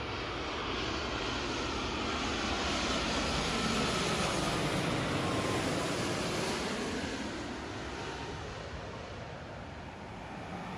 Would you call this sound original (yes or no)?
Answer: yes